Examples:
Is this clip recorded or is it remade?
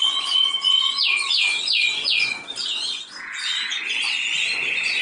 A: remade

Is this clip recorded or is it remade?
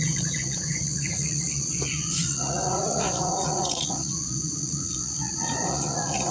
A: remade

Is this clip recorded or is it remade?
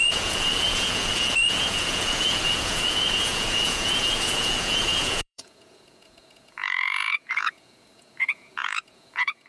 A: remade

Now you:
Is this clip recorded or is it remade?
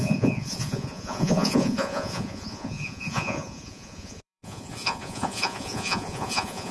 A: remade